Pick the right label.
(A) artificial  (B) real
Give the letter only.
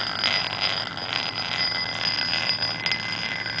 B